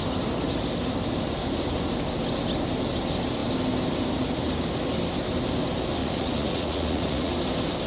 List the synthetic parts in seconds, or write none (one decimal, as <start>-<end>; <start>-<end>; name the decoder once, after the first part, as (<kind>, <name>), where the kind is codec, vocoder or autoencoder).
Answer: 6.0-7.3 (vocoder, Vocos)